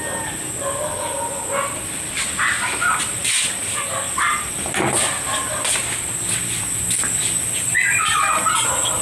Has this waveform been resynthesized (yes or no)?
no